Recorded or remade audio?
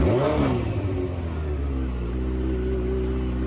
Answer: recorded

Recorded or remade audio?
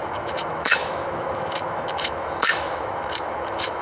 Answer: remade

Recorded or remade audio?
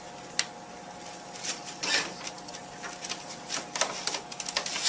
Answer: recorded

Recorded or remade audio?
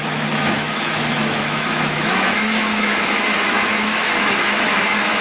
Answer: remade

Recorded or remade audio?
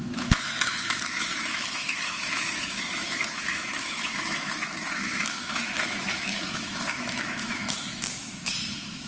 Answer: remade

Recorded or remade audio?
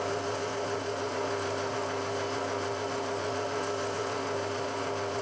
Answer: recorded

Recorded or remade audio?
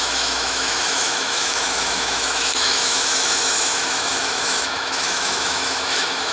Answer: remade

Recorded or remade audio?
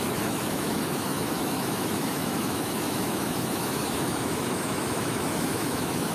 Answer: remade